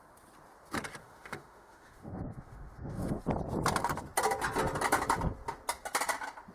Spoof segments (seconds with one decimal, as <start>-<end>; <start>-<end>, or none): 1.0-3.2